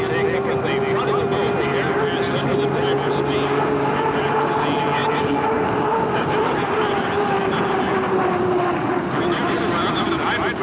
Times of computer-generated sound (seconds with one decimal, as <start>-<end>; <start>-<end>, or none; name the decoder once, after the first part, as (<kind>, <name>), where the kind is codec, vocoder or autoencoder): none